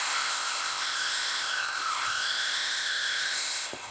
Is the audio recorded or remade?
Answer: remade